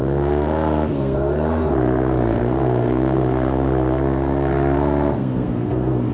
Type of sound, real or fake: fake